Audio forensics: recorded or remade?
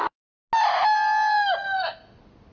recorded